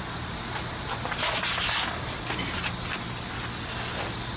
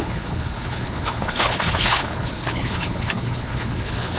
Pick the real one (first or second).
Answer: first